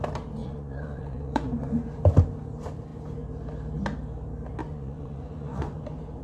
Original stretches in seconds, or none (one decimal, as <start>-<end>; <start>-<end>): 0.0-0.4; 2.0-4.6; 5.8-6.2